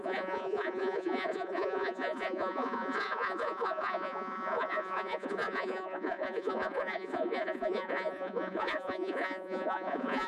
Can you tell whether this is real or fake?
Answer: fake